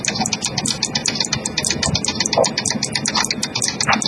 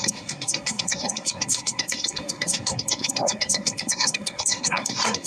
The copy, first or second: second